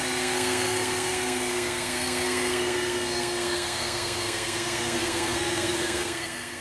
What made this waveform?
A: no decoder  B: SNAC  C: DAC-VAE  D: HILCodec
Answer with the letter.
B